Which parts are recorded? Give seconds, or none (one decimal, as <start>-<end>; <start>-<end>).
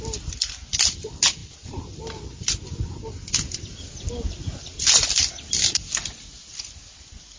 0.0-7.4